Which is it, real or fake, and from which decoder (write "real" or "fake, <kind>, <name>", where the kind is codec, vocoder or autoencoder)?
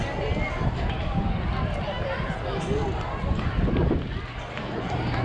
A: real